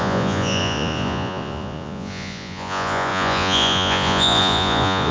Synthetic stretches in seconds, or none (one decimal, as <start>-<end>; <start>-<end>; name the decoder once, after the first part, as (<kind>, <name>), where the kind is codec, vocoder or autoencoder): 0.0-5.1 (vocoder, Vocos)